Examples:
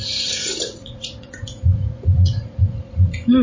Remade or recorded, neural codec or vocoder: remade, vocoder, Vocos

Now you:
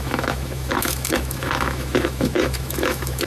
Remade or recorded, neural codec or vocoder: remade, autoencoder, DAC-VAE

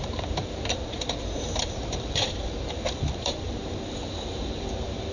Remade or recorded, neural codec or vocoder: remade, vocoder, BigVGAN v2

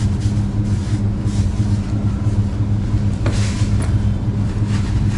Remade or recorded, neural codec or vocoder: recorded